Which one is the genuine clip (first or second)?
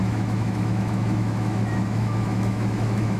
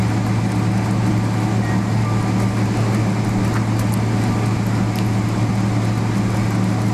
second